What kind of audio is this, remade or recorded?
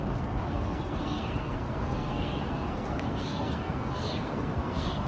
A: remade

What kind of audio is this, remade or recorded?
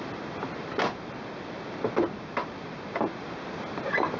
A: recorded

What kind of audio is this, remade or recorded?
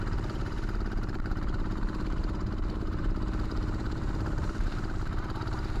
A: remade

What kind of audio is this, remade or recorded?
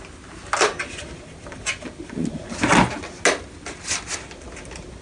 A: recorded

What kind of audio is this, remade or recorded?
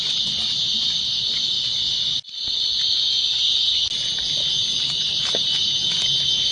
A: recorded